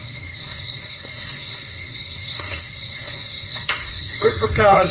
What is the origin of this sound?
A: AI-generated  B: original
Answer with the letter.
A